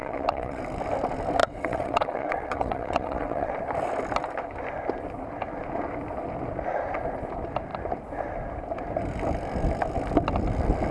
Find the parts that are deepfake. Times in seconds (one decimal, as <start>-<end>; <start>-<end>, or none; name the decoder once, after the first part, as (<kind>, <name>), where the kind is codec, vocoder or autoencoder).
0.0-0.6 (vocoder, WaveNeXt); 1.4-3.5